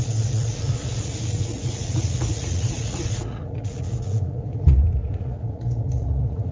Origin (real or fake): fake